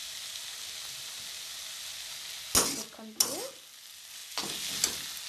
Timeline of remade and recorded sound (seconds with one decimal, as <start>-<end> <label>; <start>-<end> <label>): 0.0-5.3 recorded